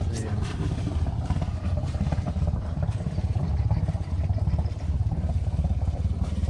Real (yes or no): no